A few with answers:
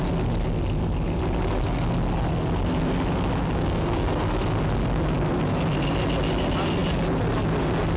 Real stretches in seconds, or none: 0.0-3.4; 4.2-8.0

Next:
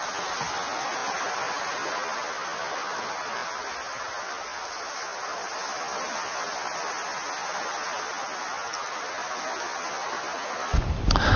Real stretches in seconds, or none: 0.0-11.4

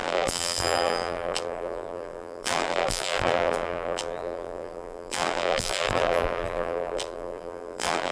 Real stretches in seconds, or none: none

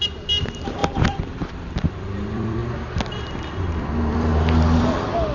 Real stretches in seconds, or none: 2.6-3.8; 4.3-4.8

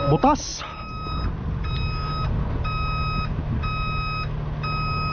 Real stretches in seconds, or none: 0.0-5.1

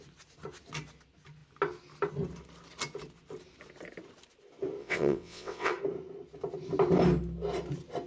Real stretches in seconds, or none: 0.0-4.8; 5.7-8.1

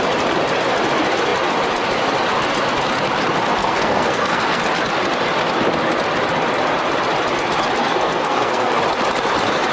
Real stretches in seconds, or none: 0.0-3.6; 4.6-7.8; 8.8-9.7